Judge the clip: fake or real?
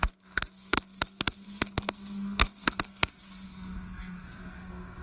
fake